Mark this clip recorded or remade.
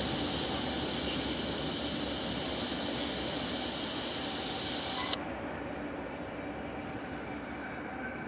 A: recorded